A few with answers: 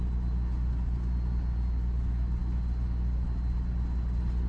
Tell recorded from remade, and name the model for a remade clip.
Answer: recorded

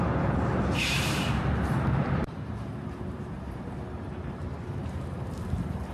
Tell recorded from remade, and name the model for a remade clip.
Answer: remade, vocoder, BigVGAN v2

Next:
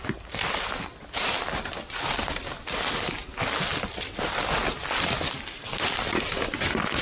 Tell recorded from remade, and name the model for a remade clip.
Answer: recorded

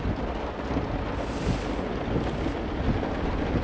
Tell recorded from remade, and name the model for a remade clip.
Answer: recorded